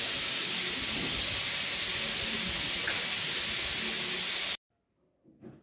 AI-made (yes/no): no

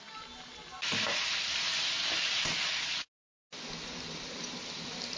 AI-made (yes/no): no